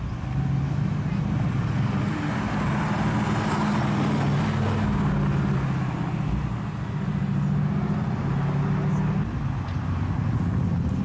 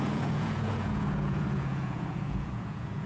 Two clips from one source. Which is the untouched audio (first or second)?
first